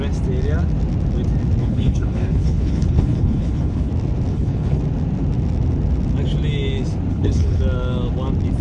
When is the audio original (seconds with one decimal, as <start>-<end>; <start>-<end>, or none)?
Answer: 0.0-1.6; 3.9-4.3; 4.8-7.1; 7.6-8.6